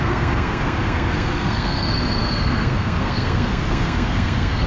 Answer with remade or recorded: remade